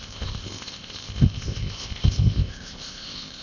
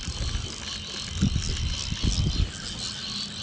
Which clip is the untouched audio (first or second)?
second